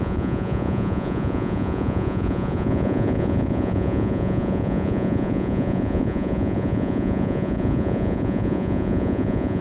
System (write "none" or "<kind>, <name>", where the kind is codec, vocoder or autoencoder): vocoder, Vocos